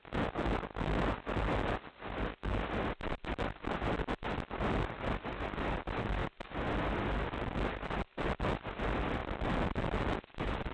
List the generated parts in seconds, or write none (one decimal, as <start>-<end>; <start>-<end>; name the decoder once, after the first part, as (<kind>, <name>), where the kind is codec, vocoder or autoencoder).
9.2-10.0 (vocoder, BigVGAN v2)